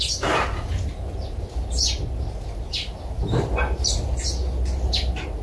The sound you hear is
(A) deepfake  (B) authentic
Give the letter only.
B